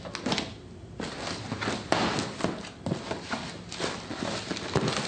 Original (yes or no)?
yes